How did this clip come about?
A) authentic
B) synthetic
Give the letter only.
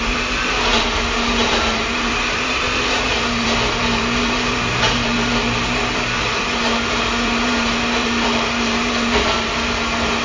B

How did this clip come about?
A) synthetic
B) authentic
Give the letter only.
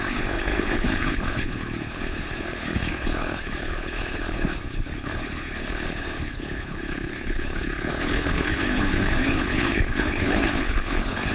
A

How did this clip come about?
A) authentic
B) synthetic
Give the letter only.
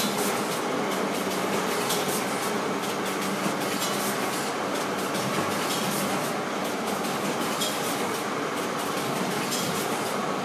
A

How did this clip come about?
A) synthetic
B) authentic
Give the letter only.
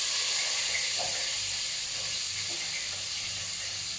B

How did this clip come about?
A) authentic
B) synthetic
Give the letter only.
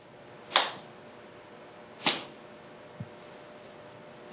A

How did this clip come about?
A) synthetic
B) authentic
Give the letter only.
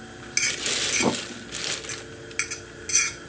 B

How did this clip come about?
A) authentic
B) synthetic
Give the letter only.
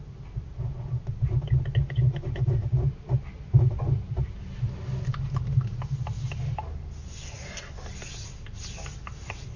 A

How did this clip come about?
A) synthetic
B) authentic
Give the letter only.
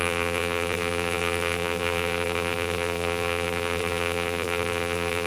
A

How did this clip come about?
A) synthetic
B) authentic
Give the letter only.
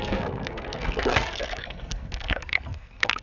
A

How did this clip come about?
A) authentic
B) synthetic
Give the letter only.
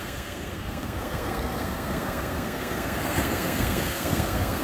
B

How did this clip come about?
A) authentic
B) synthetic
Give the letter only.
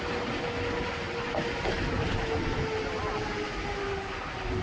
A